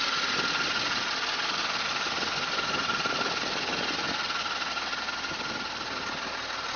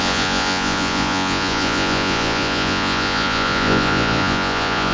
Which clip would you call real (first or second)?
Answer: first